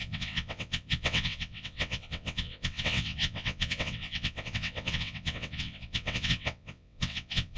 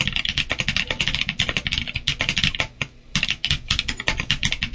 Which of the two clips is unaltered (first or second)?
second